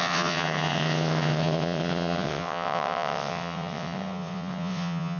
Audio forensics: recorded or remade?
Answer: remade